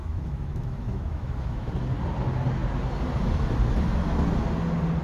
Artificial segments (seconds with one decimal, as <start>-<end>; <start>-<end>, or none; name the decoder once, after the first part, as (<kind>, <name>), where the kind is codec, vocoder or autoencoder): 0.0-1.7 (autoencoder, DAC-VAE)